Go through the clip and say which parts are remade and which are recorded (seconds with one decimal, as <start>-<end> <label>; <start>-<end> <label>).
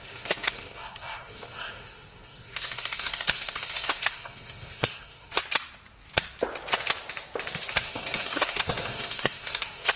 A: 0.0-5.4 remade; 5.4-7.7 recorded; 7.7-10.0 remade